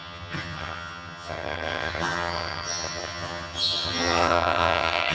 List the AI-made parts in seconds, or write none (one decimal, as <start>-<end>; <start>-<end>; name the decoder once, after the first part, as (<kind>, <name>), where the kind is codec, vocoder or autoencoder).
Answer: 0.0-5.1 (vocoder, HiFi-GAN)